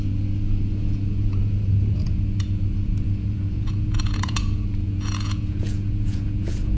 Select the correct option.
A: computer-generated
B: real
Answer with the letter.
A